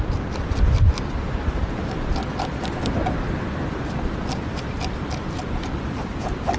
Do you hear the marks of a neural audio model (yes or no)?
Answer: no